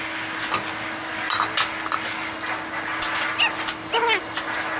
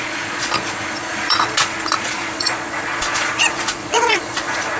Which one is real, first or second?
first